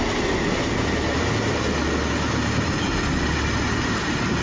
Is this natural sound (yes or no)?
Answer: yes